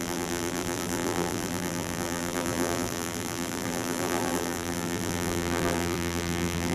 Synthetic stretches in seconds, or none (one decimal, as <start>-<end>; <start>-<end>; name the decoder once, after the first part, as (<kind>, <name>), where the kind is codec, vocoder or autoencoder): 0.0-6.7 (vocoder, BigVGAN v2)